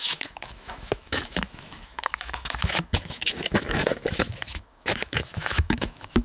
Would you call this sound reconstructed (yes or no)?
yes